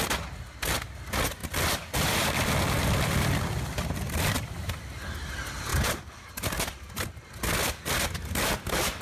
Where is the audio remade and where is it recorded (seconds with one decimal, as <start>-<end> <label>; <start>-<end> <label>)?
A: 0.0-1.4 recorded; 1.4-4.8 remade; 4.8-5.7 recorded; 5.7-7.0 remade; 7.0-9.0 recorded